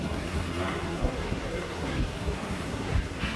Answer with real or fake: fake